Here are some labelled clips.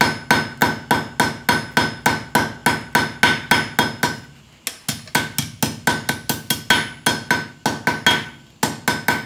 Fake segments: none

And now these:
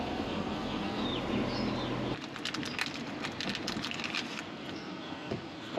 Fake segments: 0.0-1.0; 4.5-5.8

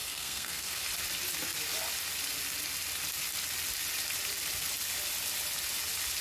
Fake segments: 0.0-0.8

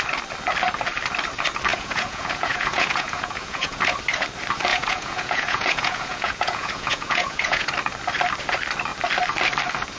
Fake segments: 1.7-3.8; 4.7-7.7

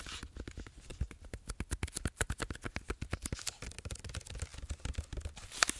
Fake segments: none